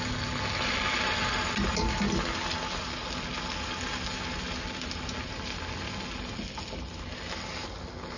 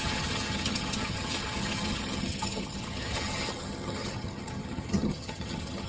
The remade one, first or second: second